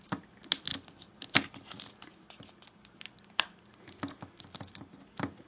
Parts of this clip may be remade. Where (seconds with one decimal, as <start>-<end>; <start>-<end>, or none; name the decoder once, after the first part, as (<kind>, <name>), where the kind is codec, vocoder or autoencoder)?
none